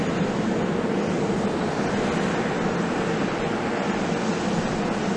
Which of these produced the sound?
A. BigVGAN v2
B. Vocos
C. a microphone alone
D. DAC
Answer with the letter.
C